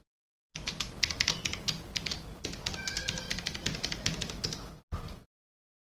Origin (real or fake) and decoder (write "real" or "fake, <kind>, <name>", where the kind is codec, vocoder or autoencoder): real